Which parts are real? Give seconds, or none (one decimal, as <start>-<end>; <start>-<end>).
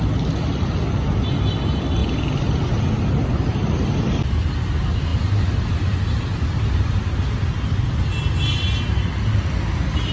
0.0-10.1